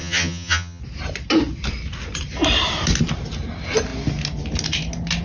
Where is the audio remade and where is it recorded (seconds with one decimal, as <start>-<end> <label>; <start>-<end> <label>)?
0.0-0.8 remade; 0.8-5.2 recorded